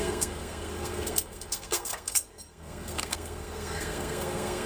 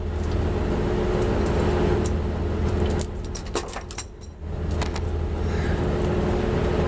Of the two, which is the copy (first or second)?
first